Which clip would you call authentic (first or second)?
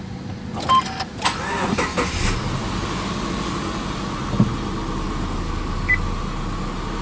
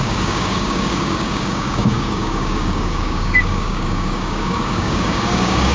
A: first